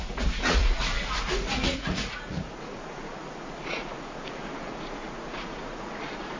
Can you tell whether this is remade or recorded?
remade